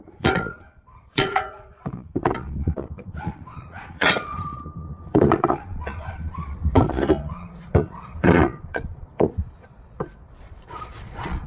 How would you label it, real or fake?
fake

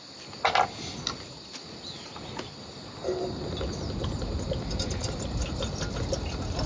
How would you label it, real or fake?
real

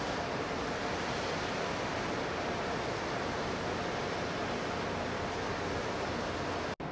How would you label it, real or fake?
real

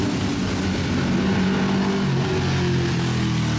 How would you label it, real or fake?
real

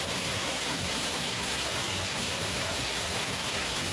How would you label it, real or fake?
fake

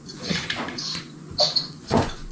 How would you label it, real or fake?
fake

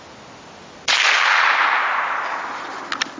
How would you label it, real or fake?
real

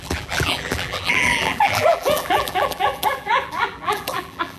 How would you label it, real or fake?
fake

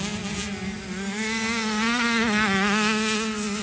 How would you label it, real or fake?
real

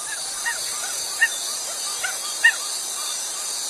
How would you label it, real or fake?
real